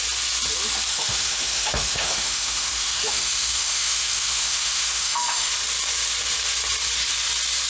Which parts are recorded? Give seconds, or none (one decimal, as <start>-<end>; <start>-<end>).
0.0-0.9; 5.5-7.7

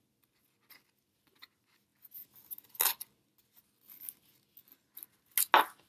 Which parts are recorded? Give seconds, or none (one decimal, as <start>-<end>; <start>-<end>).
0.0-5.9